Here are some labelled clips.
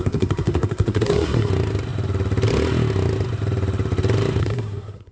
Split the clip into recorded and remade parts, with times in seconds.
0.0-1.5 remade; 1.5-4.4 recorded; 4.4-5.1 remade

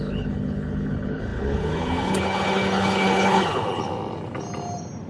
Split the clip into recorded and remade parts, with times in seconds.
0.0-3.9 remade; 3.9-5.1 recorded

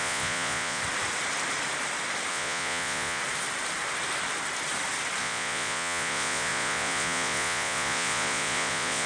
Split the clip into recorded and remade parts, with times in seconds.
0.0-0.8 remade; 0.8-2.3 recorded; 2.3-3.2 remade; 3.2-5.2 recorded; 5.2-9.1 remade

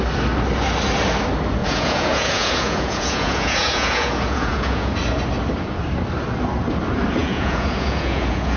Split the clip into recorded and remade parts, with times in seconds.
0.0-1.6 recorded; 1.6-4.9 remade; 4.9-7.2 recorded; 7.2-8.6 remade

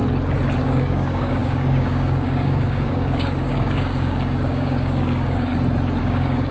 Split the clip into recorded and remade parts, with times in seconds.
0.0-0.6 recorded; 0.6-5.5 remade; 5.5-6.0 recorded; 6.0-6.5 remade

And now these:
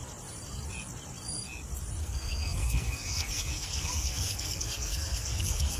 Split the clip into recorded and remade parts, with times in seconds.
0.0-2.0 recorded; 2.0-5.8 remade